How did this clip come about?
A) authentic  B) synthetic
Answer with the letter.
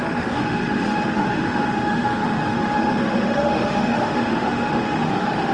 B